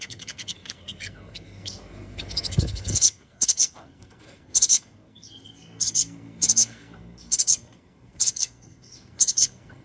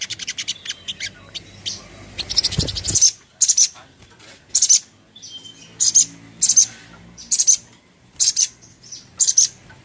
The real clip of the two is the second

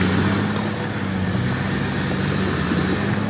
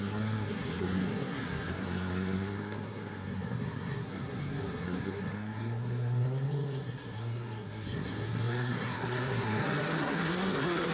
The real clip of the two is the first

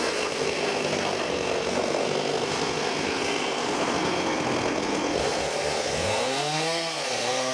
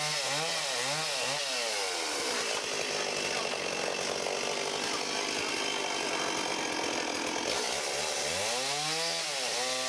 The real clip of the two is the second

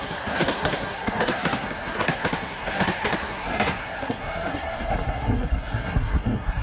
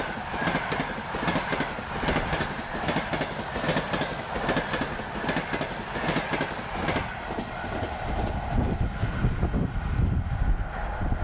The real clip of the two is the second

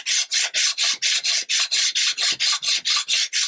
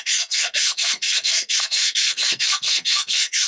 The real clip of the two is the first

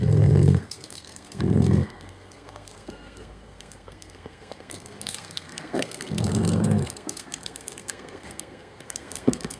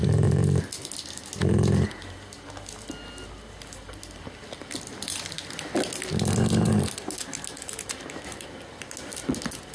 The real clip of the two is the second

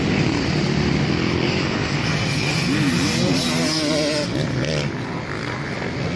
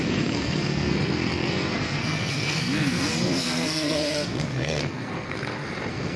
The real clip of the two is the first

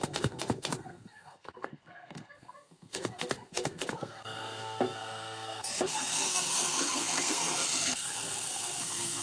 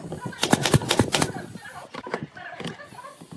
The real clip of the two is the second